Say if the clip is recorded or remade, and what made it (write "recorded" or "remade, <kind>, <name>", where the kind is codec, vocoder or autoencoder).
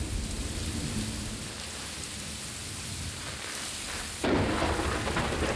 recorded